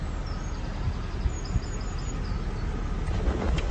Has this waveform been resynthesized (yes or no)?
no